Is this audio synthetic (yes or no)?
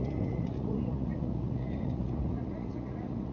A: yes